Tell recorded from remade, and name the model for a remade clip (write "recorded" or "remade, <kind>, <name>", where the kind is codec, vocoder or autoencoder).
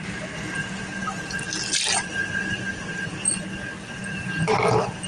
recorded